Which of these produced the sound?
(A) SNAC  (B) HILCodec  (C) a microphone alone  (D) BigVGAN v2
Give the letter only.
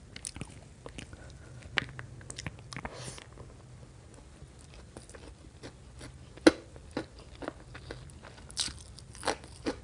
C